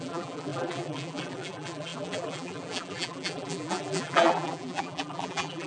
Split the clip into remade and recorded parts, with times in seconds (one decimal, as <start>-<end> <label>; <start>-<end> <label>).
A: 0.0-5.7 remade

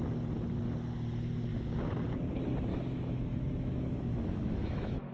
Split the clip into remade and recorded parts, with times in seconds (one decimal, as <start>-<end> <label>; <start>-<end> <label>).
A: 0.0-2.7 recorded; 2.7-5.1 remade